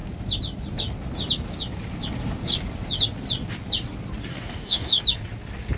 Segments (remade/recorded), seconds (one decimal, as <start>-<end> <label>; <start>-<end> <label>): 0.0-4.3 recorded; 4.3-5.0 remade; 5.0-5.8 recorded